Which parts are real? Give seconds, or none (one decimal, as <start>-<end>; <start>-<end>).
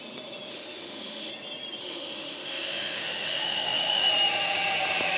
0.0-0.5; 1.3-1.8; 4.1-5.2